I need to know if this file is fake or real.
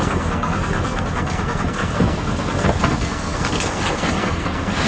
fake